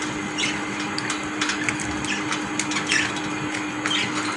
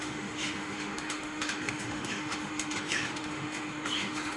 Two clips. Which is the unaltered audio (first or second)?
first